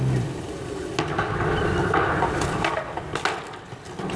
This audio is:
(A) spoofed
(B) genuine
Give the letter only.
B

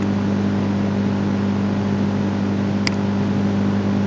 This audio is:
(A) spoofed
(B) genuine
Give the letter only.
B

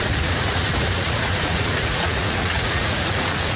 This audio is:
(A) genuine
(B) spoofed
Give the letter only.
B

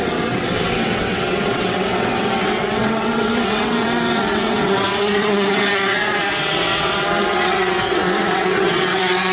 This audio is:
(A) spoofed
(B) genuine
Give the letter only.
A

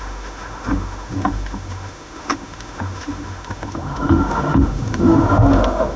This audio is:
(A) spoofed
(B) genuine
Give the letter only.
A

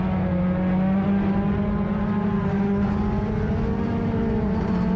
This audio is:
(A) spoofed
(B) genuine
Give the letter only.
B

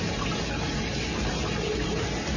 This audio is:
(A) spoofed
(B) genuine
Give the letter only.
B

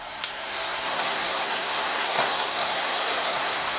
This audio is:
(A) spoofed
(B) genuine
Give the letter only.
A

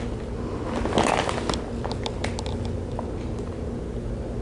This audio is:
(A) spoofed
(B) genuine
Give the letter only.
B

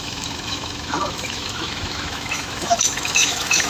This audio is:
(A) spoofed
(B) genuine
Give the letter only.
A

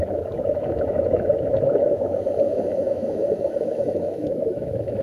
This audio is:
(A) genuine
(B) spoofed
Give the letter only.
B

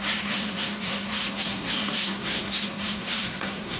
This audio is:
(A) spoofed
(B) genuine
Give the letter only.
A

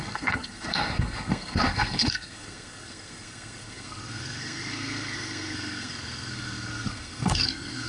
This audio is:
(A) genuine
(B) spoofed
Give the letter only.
B